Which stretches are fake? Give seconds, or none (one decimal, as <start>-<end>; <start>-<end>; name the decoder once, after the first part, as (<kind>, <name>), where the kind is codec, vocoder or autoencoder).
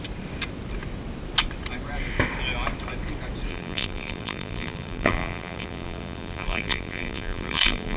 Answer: 3.5-8.0 (vocoder, BigVGAN v2)